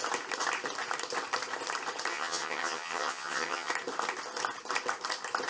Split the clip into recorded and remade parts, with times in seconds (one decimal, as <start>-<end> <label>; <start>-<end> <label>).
0.0-2.1 recorded; 2.1-3.7 remade; 3.7-5.5 recorded